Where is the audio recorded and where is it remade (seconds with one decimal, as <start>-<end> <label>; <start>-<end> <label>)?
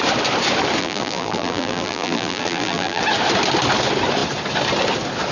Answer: 0.0-0.8 recorded; 0.8-3.0 remade; 3.0-5.3 recorded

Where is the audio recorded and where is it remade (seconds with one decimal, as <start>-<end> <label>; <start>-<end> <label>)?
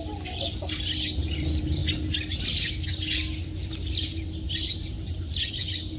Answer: 0.0-6.0 recorded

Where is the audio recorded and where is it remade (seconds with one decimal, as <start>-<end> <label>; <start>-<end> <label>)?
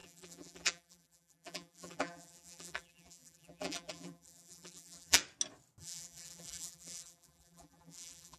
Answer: 0.0-5.2 remade; 5.2-5.8 recorded; 5.8-8.4 remade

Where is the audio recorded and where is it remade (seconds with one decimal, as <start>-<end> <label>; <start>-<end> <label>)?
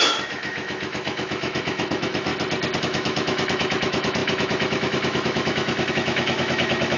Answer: 0.0-2.3 remade; 2.3-2.8 recorded; 2.8-7.0 remade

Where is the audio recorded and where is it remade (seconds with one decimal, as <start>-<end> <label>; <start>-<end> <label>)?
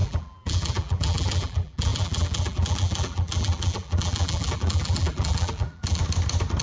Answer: 0.0-6.0 remade; 6.0-6.6 recorded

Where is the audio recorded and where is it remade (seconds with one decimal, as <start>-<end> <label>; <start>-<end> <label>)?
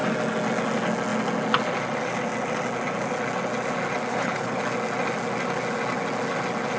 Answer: 0.0-4.1 recorded; 4.1-4.6 remade; 4.6-6.8 recorded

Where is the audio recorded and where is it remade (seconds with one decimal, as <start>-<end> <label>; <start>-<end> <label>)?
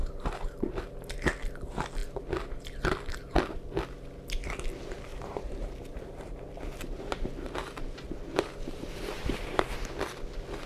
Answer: 0.0-0.8 remade; 0.8-5.1 recorded; 5.1-9.7 remade; 9.7-10.7 recorded